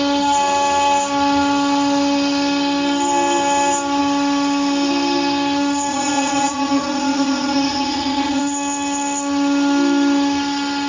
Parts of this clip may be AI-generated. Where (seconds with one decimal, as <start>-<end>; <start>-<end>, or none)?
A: 5.9-8.4